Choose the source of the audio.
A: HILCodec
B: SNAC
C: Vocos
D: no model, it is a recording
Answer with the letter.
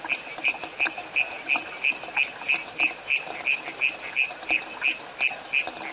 D